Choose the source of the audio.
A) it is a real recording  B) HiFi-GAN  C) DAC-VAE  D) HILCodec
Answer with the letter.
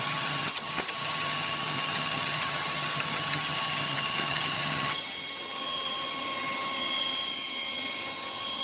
B